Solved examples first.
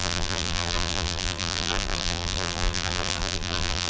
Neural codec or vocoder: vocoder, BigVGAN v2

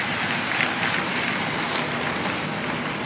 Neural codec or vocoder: none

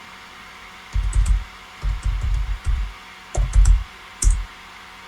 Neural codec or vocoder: vocoder, BigVGAN v2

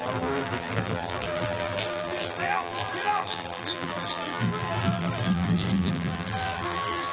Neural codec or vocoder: vocoder, BigVGAN v2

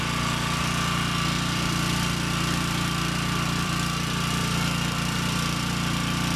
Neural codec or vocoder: vocoder, BigVGAN v2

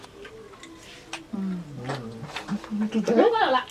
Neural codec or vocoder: none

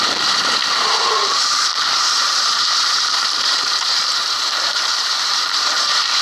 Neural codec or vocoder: vocoder, BigVGAN v2